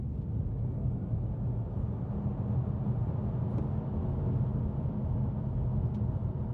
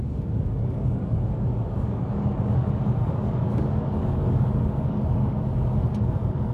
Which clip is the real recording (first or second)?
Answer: first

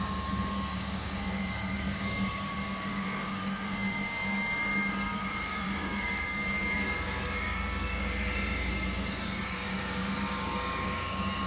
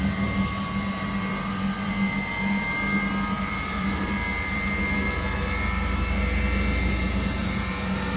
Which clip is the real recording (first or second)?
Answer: second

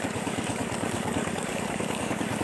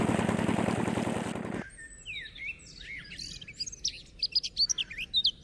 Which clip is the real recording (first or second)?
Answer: second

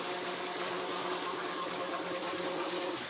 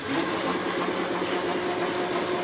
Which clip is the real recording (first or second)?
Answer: second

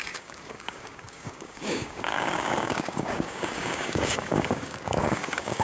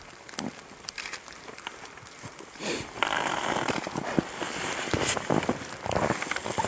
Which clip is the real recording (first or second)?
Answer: second